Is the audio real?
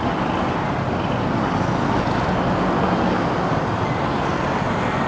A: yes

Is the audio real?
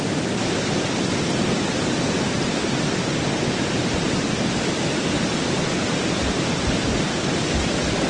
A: yes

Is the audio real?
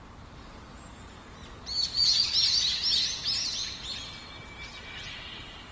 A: yes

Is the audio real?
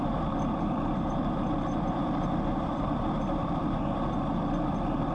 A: no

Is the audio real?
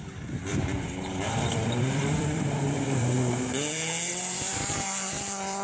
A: no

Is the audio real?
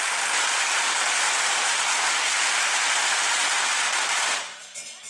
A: yes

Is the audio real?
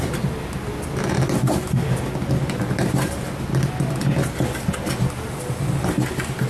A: yes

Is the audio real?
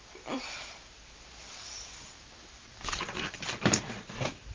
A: no